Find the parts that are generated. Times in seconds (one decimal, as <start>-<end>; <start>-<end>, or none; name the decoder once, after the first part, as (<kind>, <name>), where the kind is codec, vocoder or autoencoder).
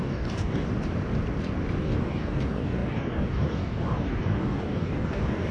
0.0-0.7 (codec, DAC); 1.8-5.5